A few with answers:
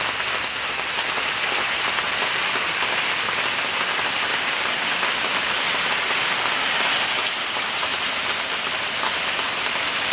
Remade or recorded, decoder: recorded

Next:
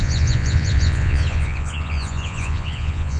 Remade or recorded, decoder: remade, vocoder, Vocos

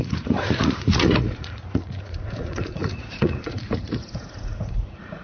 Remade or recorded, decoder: remade, vocoder, Vocos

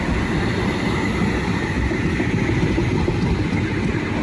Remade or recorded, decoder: recorded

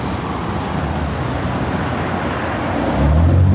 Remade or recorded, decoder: recorded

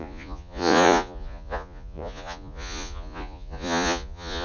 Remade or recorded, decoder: remade, vocoder, Vocos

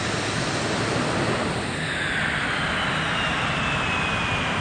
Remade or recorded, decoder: recorded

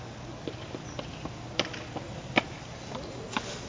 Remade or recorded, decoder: recorded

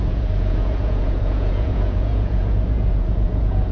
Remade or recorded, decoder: remade, vocoder, Vocos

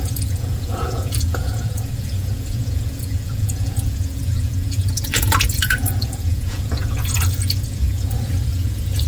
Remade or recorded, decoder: remade, vocoder, Vocos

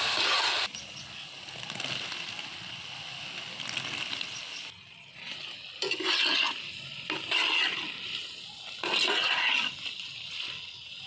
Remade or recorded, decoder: recorded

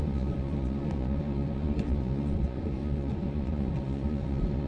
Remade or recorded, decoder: remade, vocoder, Vocos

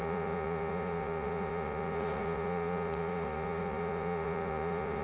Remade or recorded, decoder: remade, vocoder, Vocos